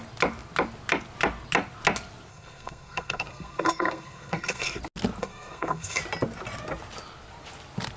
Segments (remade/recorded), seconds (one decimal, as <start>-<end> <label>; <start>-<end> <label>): 0.0-2.3 recorded; 2.3-4.8 remade; 4.8-5.2 recorded; 5.2-6.0 remade; 6.0-8.0 recorded